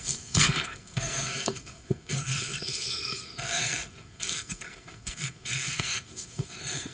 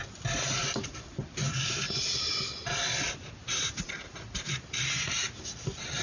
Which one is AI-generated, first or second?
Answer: first